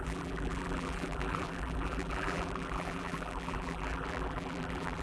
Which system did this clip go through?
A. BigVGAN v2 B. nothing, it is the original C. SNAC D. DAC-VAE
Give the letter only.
A